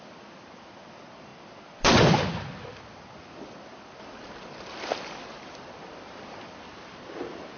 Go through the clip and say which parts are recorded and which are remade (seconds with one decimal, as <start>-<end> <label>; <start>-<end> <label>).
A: 0.0-7.6 remade